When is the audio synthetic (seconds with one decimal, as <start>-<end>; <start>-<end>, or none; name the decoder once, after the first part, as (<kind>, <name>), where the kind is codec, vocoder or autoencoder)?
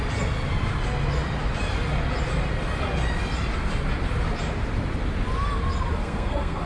6.0-6.7 (codec, SNAC)